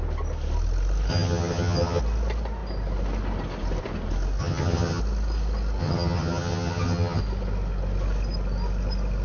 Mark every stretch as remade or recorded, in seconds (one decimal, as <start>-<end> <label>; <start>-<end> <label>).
0.0-1.1 recorded; 1.1-2.0 remade; 2.0-4.4 recorded; 4.4-5.0 remade; 5.0-5.8 recorded; 5.8-7.2 remade; 7.2-9.2 recorded